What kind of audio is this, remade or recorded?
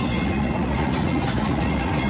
remade